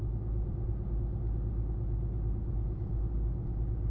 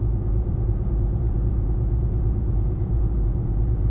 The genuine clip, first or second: first